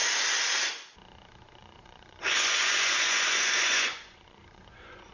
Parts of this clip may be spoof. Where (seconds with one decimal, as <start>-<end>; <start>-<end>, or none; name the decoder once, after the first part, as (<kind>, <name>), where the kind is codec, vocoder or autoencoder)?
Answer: 1.6-5.1 (vocoder, Vocos)